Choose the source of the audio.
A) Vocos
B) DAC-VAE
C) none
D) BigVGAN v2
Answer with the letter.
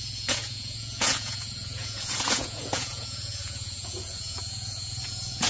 A